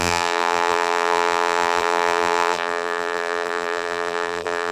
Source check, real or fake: fake